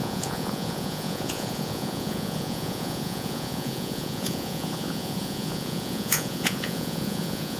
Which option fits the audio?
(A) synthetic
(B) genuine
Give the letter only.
A